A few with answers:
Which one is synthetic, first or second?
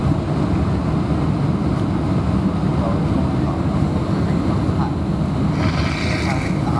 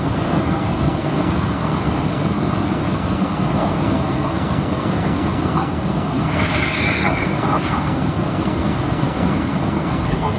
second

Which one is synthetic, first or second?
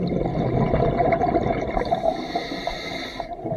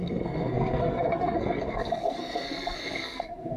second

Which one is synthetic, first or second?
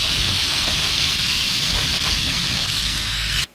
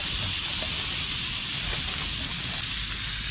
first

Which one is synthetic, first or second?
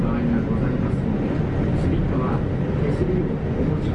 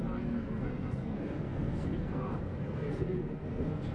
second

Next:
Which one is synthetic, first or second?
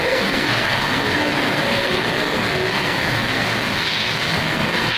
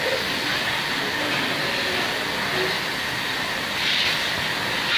first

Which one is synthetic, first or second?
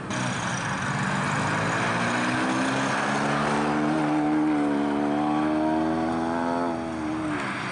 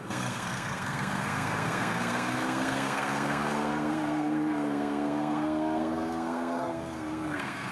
second